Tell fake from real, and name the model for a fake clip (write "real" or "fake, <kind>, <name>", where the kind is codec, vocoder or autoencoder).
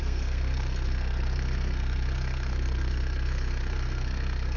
fake, codec, SNAC